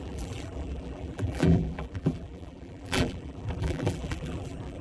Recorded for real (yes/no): no